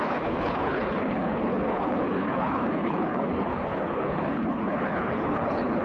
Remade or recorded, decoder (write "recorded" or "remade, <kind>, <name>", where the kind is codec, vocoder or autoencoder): remade, codec, HILCodec